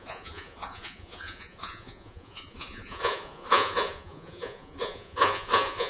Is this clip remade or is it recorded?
remade